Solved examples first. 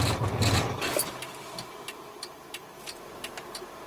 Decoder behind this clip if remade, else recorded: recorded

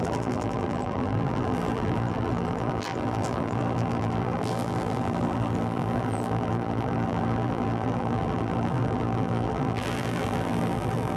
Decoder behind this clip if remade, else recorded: remade, vocoder, BigVGAN v2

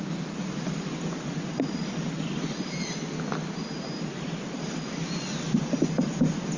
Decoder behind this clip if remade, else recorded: recorded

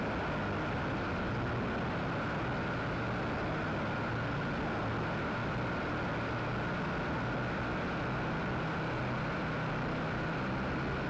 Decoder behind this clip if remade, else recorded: recorded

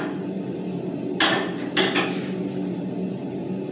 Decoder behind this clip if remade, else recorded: recorded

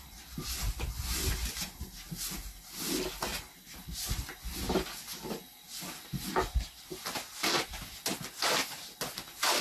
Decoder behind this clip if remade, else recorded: recorded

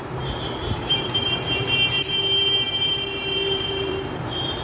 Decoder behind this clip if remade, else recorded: remade, vocoder, BigVGAN v2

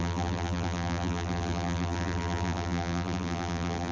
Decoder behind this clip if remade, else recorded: remade, vocoder, BigVGAN v2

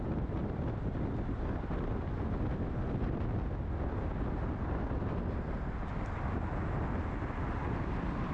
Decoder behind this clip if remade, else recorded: recorded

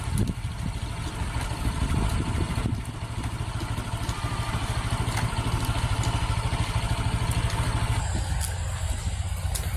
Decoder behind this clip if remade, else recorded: recorded